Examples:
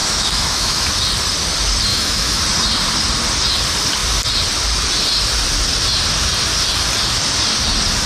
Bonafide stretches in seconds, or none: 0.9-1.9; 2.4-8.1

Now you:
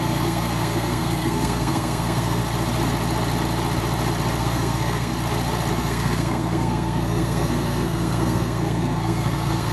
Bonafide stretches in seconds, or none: 2.4-4.4; 5.1-5.7

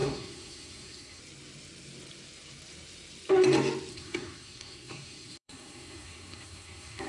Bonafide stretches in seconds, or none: 1.2-3.9